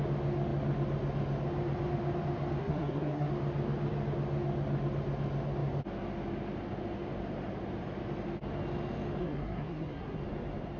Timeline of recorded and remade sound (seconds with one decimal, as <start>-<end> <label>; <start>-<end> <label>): 0.0-2.6 recorded; 2.6-3.3 remade; 3.3-9.2 recorded; 9.2-10.2 remade; 10.2-10.8 recorded